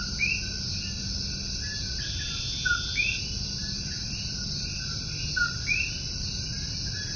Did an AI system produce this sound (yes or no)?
no